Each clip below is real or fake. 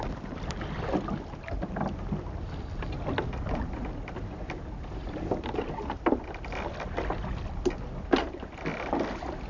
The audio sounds real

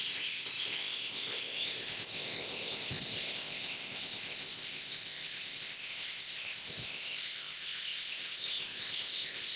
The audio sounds fake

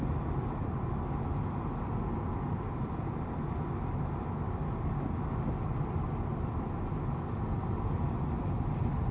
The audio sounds real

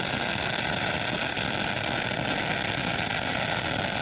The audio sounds real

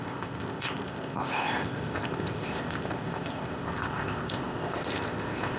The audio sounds fake